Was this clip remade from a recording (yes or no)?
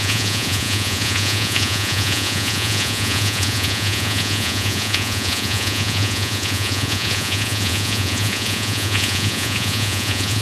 yes